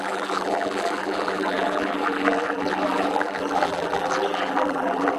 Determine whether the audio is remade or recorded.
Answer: remade